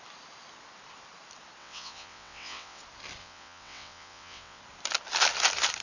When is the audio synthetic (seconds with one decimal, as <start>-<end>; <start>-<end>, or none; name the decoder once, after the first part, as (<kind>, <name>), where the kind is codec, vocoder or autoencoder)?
1.6-2.8 (vocoder, WaveNeXt); 3.2-4.6